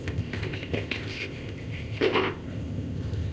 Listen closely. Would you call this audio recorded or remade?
remade